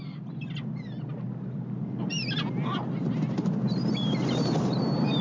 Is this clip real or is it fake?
real